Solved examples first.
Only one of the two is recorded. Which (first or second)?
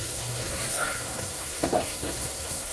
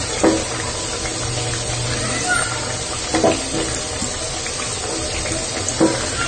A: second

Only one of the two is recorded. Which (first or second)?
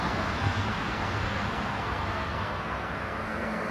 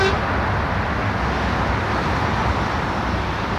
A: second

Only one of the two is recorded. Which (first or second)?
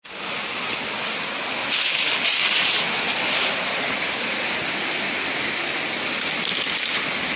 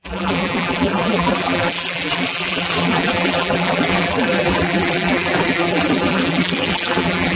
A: first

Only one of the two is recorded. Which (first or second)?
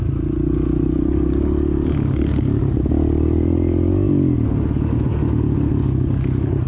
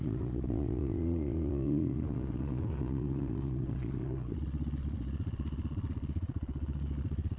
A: first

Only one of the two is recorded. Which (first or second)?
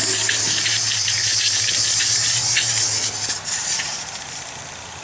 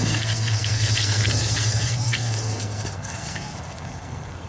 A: first